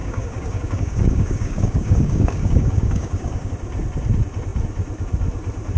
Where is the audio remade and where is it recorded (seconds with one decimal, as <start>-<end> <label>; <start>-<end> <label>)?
0.0-3.5 remade; 3.5-5.8 recorded